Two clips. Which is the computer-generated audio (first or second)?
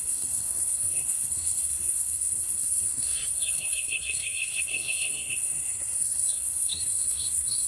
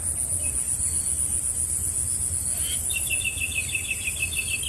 first